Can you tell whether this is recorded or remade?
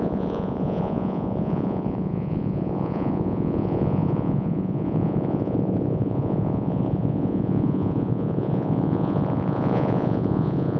remade